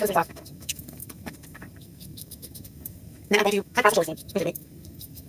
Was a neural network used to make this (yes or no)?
yes